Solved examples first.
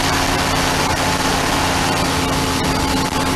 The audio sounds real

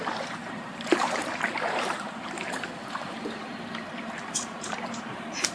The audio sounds fake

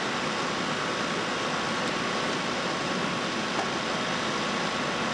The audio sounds real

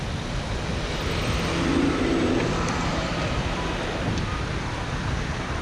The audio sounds real